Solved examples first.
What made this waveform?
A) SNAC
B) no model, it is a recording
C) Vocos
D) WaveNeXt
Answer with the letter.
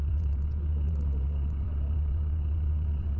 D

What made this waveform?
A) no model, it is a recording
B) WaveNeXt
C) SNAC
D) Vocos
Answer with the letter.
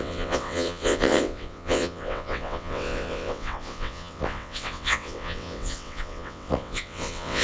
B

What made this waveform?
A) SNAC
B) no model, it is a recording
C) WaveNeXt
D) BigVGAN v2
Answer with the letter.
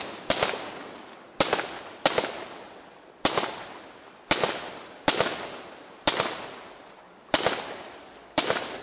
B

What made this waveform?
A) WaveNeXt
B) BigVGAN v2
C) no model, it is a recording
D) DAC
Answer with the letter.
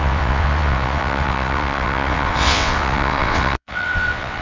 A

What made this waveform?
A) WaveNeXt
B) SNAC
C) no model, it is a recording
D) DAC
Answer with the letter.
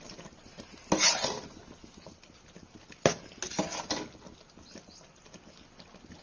C